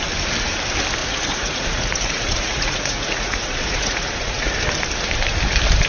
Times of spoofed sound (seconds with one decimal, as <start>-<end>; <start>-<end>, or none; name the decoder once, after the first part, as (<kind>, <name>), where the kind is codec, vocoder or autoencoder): 1.0-4.5 (vocoder, Vocos)